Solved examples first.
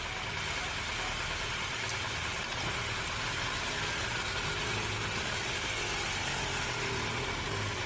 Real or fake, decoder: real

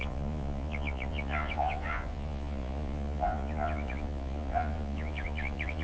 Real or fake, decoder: fake, vocoder, Vocos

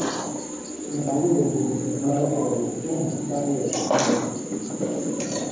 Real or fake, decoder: real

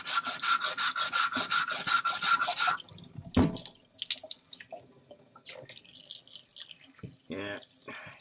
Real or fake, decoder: real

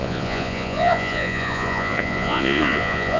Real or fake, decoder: fake, vocoder, Vocos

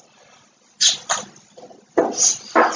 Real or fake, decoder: real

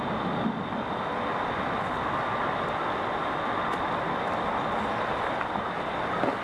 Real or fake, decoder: real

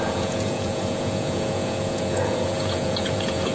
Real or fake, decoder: fake, vocoder, Vocos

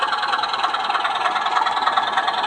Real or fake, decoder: real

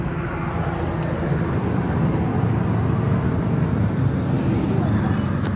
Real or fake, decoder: real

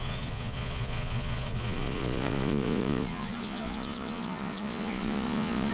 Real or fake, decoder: fake, vocoder, Vocos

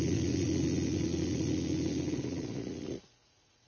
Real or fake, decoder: fake, vocoder, Vocos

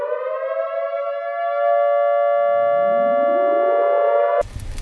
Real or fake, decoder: real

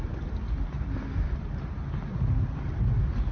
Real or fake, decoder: real